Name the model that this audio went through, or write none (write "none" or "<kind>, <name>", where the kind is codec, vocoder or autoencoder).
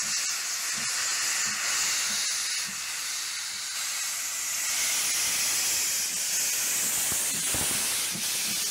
none